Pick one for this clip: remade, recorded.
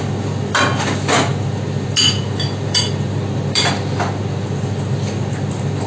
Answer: recorded